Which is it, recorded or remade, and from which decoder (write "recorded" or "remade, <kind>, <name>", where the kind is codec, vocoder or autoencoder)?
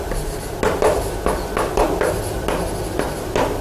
recorded